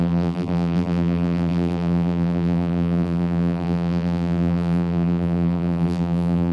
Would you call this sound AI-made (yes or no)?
yes